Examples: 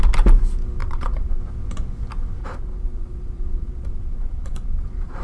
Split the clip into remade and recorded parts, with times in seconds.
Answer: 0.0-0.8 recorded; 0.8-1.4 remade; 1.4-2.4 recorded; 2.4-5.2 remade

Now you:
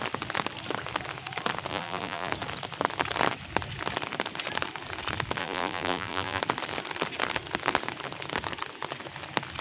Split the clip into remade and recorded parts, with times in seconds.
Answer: 0.0-1.7 recorded; 1.7-2.3 remade; 2.3-5.4 recorded; 5.4-6.4 remade; 6.4-9.6 recorded

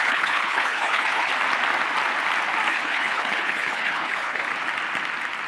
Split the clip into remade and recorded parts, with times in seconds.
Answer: 0.0-1.3 remade; 1.3-2.7 recorded; 2.7-4.5 remade; 4.5-5.5 recorded